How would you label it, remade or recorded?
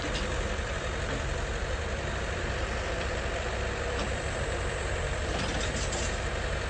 remade